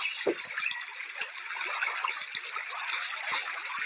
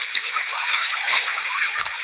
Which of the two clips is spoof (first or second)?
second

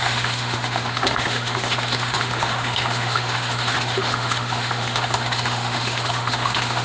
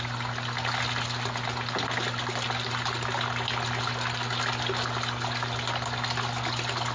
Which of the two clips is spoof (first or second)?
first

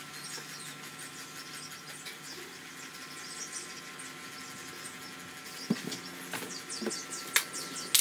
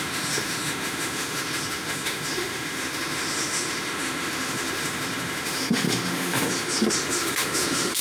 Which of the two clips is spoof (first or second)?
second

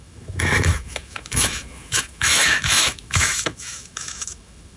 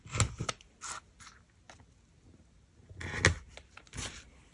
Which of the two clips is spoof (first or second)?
first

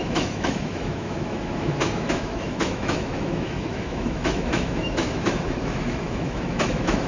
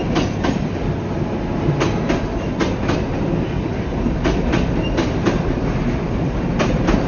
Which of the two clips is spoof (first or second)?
first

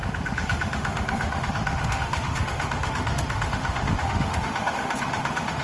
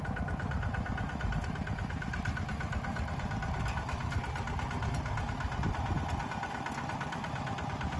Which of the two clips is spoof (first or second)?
first